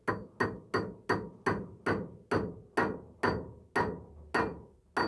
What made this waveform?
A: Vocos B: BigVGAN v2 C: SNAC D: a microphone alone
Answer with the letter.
D